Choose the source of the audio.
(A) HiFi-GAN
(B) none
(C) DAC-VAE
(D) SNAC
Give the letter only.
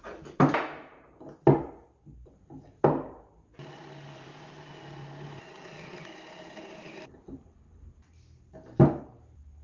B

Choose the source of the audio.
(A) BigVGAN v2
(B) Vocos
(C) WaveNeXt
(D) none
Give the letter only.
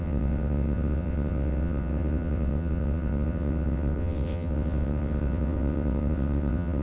C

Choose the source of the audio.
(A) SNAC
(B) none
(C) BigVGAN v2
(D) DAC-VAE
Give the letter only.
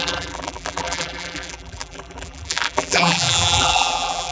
C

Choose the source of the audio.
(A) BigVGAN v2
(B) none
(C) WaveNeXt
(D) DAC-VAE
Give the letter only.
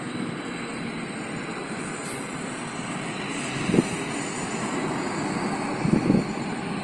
B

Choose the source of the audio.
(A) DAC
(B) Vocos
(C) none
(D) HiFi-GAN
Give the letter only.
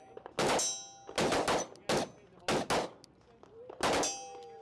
C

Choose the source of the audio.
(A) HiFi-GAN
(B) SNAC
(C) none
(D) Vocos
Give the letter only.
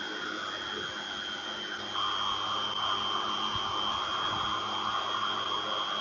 C